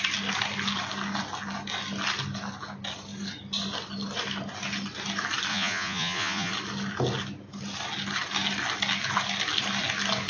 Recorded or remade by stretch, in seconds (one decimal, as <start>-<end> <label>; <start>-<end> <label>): 0.0-5.5 recorded; 5.5-6.5 remade; 6.5-10.3 recorded

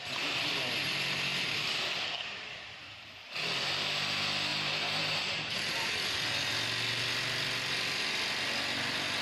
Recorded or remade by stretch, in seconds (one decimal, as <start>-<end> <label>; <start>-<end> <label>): 0.0-4.5 recorded; 4.5-6.5 remade; 6.5-9.2 recorded

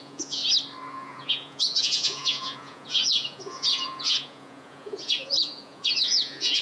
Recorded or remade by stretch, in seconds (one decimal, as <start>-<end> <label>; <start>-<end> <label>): 0.0-0.4 remade; 0.4-0.9 recorded; 0.9-6.6 remade

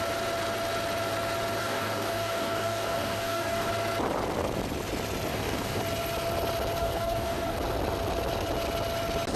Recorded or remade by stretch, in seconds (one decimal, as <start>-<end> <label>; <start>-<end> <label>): 0.0-1.6 recorded; 1.6-3.7 remade; 3.7-5.3 recorded; 5.3-5.8 remade; 5.8-6.8 recorded; 6.8-7.6 remade; 7.6-9.4 recorded

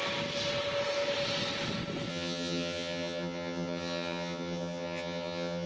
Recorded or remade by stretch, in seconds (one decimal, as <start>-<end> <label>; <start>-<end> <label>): 0.0-2.1 recorded; 2.1-5.7 remade

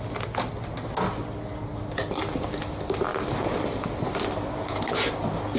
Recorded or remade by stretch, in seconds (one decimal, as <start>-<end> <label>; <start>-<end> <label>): 0.0-5.6 recorded